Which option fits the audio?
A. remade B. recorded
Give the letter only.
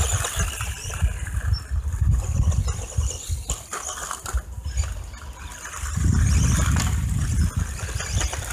A